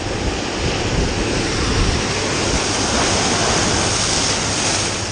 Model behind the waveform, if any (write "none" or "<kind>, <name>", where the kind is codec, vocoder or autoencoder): none